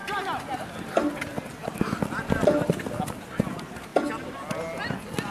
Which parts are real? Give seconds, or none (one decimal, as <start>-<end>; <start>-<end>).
0.0-5.3